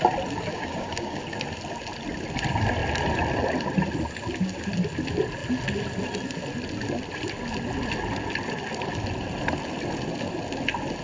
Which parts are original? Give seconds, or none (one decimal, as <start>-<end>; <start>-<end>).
0.0-0.5; 1.2-11.0